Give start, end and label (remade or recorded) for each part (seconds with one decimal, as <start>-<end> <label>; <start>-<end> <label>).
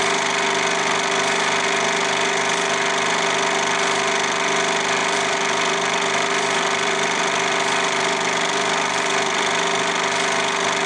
0.0-5.0 recorded; 5.0-9.5 remade; 9.5-10.9 recorded